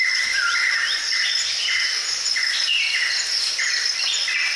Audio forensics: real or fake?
real